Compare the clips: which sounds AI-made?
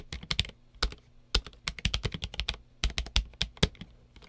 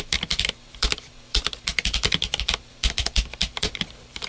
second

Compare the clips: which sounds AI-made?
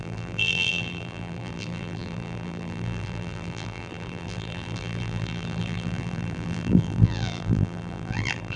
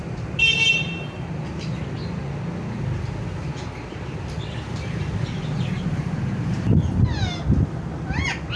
first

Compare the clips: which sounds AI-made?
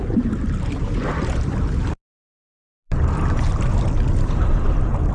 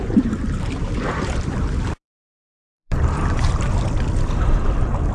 second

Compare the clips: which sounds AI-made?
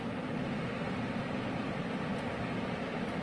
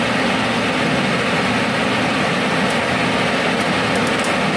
first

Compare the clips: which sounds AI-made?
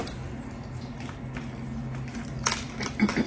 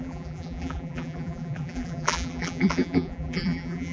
second